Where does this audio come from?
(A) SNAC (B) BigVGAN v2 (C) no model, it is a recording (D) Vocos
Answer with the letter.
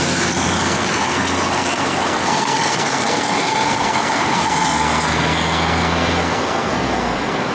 A